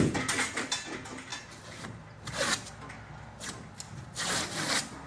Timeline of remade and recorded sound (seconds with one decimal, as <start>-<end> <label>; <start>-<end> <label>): 0.0-5.1 recorded